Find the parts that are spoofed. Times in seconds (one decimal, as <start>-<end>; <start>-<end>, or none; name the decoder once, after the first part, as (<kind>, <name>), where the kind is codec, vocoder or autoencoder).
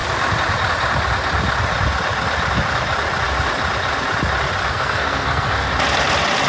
4.7-5.7 (codec, SNAC)